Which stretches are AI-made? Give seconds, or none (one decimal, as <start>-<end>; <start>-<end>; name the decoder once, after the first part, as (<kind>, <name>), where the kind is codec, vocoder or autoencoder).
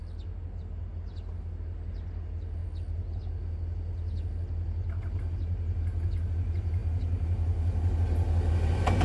none